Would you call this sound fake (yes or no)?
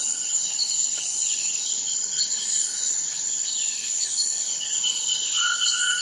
yes